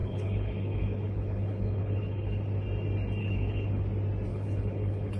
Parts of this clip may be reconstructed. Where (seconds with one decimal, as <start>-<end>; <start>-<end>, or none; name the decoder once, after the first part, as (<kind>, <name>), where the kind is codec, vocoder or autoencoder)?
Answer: 0.0-2.4 (codec, HILCodec); 3.2-3.8; 4.3-5.2